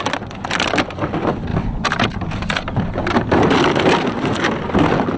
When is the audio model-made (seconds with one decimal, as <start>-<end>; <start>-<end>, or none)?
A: none